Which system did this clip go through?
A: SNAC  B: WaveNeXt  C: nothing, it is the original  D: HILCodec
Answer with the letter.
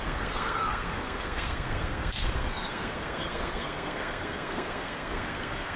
A